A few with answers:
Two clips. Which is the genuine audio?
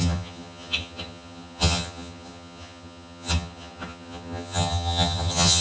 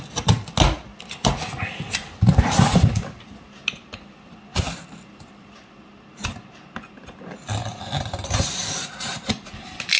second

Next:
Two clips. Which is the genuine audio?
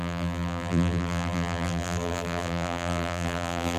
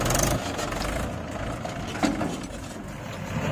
second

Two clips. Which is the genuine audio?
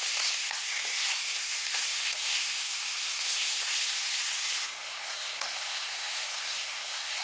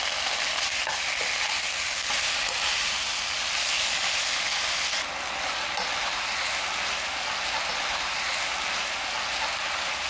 second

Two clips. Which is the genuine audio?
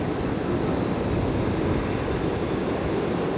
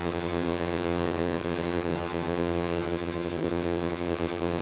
first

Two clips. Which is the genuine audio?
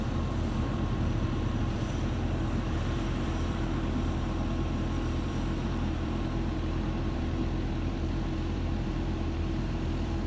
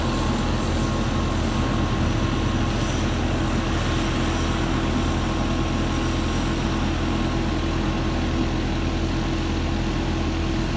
second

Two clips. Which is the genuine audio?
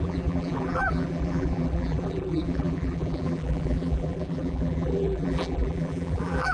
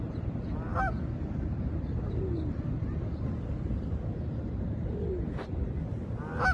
second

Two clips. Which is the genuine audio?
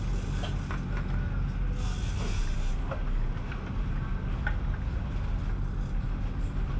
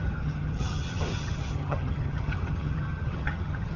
first